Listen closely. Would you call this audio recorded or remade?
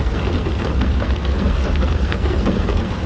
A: remade